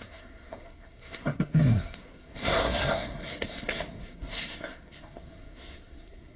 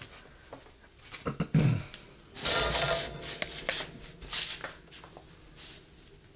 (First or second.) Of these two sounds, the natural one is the second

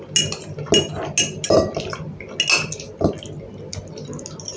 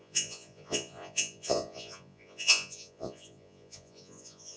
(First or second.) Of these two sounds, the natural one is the first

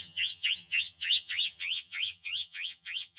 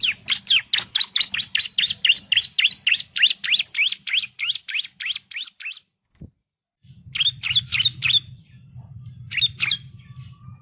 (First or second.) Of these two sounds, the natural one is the second